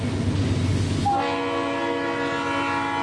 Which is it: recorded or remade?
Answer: recorded